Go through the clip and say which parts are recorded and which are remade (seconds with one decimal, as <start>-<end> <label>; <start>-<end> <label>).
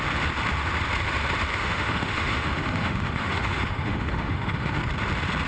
0.0-1.5 recorded; 1.5-4.8 remade; 4.8-5.5 recorded